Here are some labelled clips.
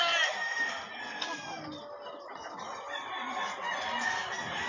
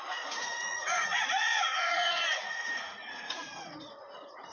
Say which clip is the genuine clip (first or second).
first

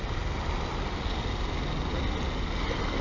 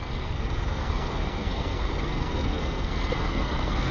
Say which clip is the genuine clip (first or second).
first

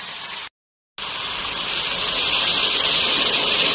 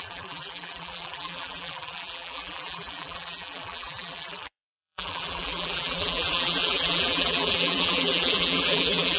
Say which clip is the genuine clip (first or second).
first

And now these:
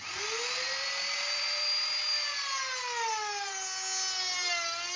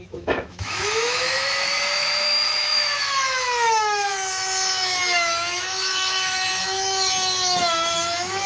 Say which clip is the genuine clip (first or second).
first